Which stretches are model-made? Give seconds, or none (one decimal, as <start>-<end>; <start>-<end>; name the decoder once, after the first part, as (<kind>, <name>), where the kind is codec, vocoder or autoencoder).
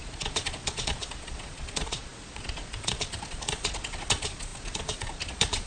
0.0-5.7 (vocoder, Vocos)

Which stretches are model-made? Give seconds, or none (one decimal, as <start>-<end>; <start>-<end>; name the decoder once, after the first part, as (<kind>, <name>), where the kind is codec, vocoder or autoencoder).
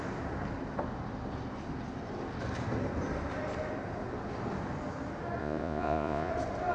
5.4-6.3 (vocoder, Vocos)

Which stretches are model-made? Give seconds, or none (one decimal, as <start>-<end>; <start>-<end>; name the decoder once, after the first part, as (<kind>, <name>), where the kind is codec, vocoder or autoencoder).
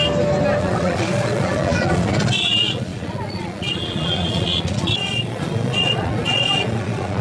0.6-7.2 (vocoder, Vocos)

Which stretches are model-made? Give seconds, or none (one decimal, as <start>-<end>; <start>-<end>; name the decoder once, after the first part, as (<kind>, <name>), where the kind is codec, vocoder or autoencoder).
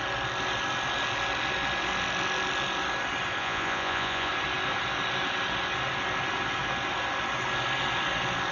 3.4-4.3 (vocoder, Vocos)